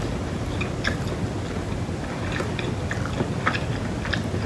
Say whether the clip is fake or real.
real